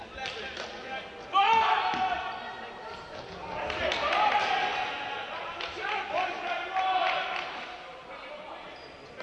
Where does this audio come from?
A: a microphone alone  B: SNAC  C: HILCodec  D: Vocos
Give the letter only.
A